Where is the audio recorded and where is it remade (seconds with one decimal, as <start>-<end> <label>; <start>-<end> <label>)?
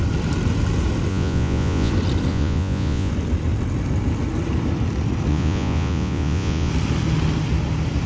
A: 0.0-1.1 recorded; 1.1-1.9 remade; 1.9-2.3 recorded; 2.3-3.1 remade; 3.1-5.3 recorded; 5.3-6.7 remade; 6.7-8.1 recorded